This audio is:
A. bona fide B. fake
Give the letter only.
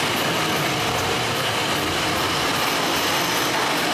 A